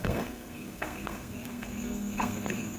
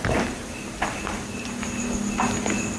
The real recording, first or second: second